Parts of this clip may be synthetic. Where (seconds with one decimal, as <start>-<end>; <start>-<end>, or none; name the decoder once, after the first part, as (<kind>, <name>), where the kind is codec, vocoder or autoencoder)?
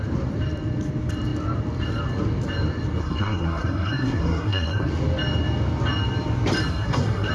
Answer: 3.0-4.9 (codec, SNAC); 6.7-7.3